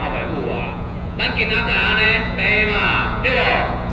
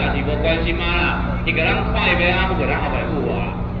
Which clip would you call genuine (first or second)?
second